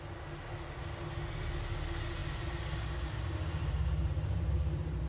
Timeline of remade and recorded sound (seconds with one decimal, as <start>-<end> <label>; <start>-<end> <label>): 0.0-3.6 recorded; 3.6-5.1 remade